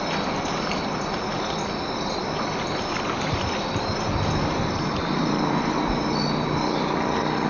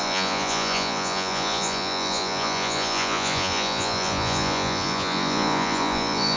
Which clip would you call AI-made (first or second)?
second